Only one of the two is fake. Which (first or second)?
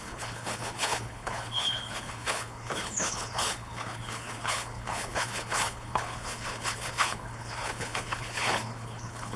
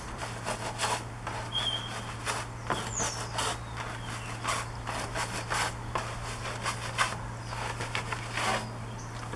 first